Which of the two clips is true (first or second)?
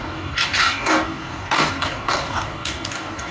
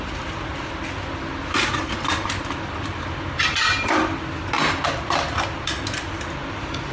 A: second